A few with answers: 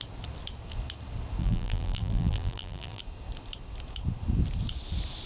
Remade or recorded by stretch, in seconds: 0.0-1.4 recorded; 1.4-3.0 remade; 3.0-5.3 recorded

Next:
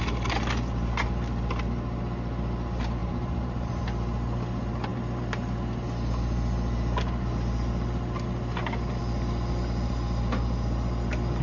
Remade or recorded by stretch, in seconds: 0.0-3.0 recorded; 3.0-3.8 remade; 3.8-11.4 recorded

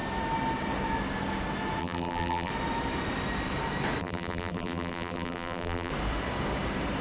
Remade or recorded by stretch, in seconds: 0.0-1.8 recorded; 1.8-2.5 remade; 2.5-4.0 recorded; 4.0-5.9 remade; 5.9-7.0 recorded